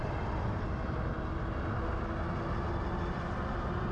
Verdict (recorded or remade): recorded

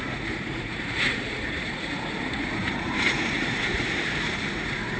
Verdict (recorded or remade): remade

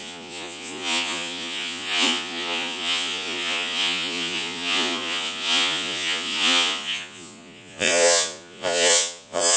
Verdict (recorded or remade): remade